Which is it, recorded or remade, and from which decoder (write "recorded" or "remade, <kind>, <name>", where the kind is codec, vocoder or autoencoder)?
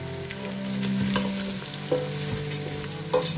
recorded